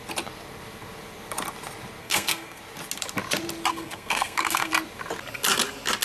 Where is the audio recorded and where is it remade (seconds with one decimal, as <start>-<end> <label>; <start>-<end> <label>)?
0.0-2.0 recorded; 2.0-2.6 remade; 2.6-3.7 recorded; 3.7-4.7 remade; 4.7-6.0 recorded